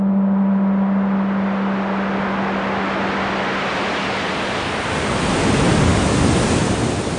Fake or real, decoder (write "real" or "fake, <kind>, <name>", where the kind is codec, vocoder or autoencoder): real